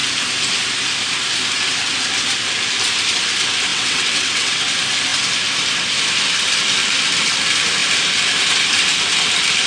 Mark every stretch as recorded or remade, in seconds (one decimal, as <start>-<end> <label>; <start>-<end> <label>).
0.0-3.7 recorded; 3.7-4.6 remade; 4.6-9.7 recorded